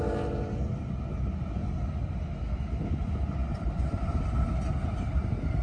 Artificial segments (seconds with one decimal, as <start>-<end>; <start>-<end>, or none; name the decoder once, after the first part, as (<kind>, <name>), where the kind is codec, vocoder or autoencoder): 3.4-4.5 (vocoder, BigVGAN v2)